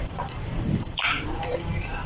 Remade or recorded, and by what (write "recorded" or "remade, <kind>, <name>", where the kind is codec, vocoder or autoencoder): remade, vocoder, BigVGAN v2